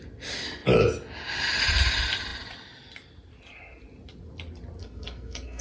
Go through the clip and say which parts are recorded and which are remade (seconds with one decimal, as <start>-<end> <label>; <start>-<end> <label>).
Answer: 0.0-4.8 recorded; 4.8-5.6 remade